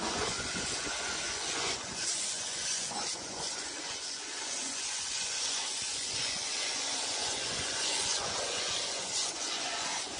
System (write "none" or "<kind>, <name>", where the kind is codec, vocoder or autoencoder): vocoder, Vocos